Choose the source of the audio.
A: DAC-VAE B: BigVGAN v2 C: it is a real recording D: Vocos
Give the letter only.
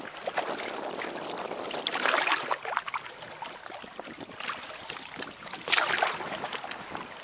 C